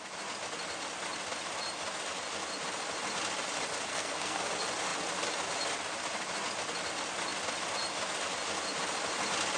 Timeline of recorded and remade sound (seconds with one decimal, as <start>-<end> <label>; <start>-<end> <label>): 0.0-3.9 recorded; 3.9-4.5 remade; 4.5-9.6 recorded